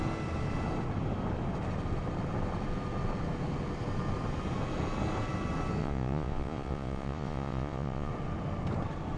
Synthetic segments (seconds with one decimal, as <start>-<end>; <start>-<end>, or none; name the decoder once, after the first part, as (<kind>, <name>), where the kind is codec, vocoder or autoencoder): 5.8-8.1 (vocoder, Vocos)